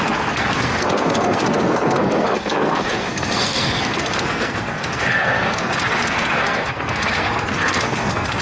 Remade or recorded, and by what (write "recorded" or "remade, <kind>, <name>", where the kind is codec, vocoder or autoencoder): remade, codec, SNAC